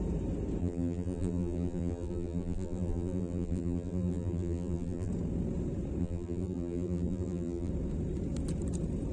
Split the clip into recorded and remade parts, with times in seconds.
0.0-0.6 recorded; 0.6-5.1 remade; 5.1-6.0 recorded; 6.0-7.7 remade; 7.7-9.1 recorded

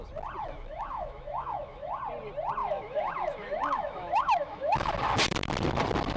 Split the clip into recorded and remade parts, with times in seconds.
0.0-0.4 recorded; 0.4-2.0 remade; 2.0-2.6 recorded; 2.6-4.9 remade; 4.9-6.2 recorded

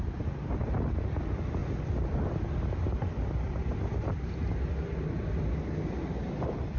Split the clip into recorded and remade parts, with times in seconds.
0.0-6.8 recorded

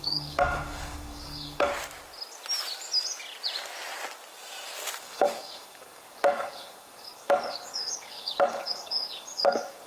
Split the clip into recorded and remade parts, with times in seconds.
0.0-1.7 remade; 1.7-5.0 recorded; 5.0-9.9 remade

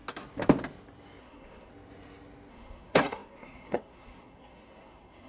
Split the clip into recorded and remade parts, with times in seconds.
0.0-1.2 recorded; 1.2-1.7 remade; 1.7-2.5 recorded; 2.5-5.3 remade

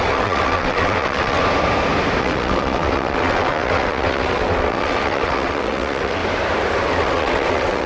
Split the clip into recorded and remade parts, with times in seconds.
0.0-1.4 remade; 1.4-2.2 recorded; 2.2-6.2 remade; 6.2-6.9 recorded; 6.9-7.9 remade

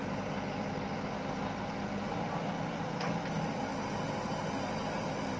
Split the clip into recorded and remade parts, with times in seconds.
0.0-5.4 recorded

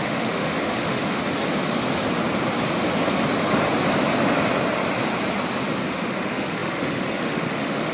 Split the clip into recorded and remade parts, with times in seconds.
0.0-1.2 remade; 1.2-5.9 recorded; 5.9-7.9 remade